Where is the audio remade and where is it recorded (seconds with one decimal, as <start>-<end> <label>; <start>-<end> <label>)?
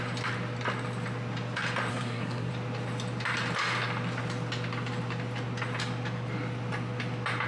0.0-1.9 recorded; 1.9-2.5 remade; 2.5-7.5 recorded